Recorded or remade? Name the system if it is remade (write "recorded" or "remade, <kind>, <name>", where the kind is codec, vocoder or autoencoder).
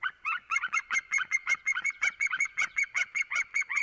remade, vocoder, Vocos